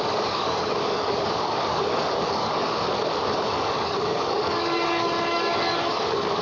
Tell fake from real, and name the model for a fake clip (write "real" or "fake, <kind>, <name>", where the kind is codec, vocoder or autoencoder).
fake, codec, DAC